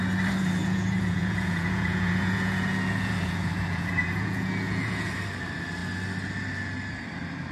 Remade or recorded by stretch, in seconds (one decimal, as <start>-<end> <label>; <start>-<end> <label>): 0.0-0.6 recorded; 0.6-5.1 remade; 5.1-7.5 recorded